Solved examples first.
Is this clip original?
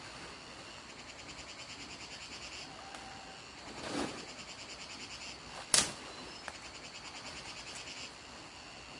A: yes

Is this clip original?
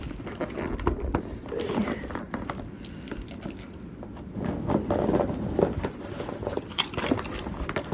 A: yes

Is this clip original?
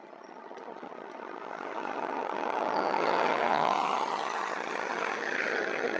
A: no